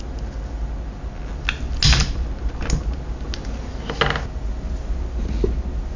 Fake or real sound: real